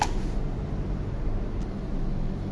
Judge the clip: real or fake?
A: real